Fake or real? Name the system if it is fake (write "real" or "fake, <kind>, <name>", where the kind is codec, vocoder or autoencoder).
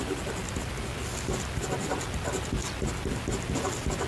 real